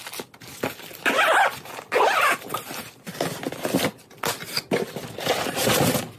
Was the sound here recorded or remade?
recorded